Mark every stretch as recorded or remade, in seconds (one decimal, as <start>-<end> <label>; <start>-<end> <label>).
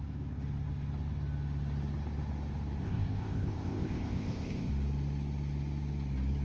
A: 0.0-2.8 recorded; 2.8-4.7 remade; 4.7-6.4 recorded